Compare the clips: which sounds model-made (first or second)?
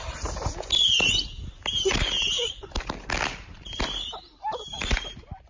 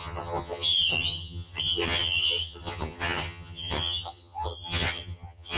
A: second